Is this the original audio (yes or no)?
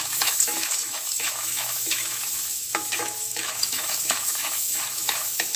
no